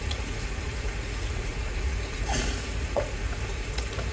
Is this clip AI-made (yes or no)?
yes